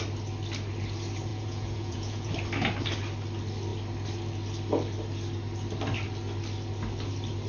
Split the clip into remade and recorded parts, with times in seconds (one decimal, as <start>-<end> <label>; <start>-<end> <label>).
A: 0.0-1.3 recorded; 1.3-2.3 remade; 2.3-7.5 recorded